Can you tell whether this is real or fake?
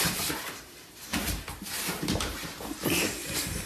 fake